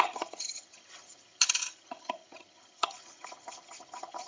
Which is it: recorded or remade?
remade